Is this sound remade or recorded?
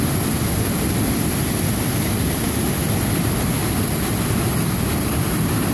recorded